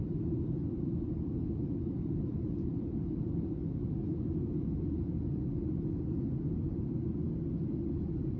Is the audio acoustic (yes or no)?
yes